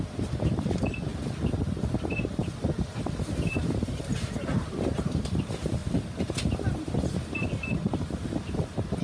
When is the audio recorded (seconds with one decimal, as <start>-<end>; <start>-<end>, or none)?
1.1-1.6; 2.4-3.0